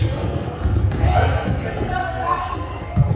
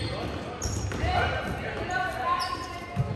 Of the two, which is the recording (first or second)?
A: second